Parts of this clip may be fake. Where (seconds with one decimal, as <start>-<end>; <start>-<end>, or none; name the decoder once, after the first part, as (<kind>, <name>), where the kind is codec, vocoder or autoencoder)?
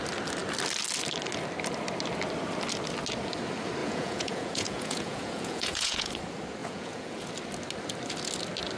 3.8-6.1 (vocoder, Vocos); 6.6-7.3